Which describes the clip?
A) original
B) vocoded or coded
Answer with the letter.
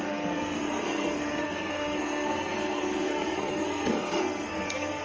B